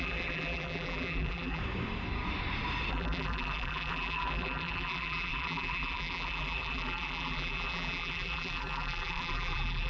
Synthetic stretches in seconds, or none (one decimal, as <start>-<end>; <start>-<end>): 0.0-1.6; 2.9-9.9